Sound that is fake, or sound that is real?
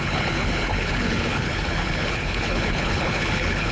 fake